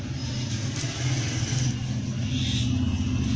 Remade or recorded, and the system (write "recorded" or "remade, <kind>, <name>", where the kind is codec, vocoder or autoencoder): recorded